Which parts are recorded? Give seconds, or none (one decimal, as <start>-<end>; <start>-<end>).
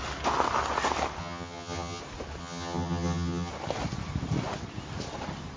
0.0-1.2; 2.0-2.4; 3.5-5.6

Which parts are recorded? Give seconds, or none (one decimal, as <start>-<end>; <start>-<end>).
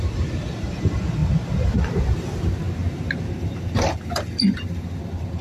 none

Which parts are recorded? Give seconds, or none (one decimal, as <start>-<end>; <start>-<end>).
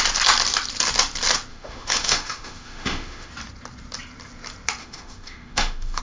0.0-1.5; 3.3-4.8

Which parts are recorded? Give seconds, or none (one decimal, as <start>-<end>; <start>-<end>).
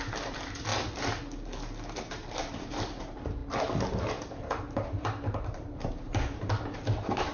0.7-1.9; 3.4-4.0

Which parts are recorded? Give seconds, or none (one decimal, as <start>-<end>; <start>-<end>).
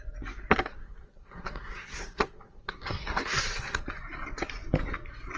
0.0-0.7; 3.8-5.4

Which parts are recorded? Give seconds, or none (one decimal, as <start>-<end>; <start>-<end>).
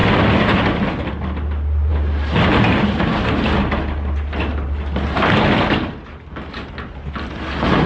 0.0-7.9